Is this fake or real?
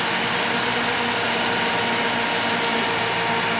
real